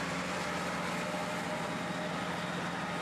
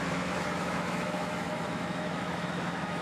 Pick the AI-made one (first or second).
second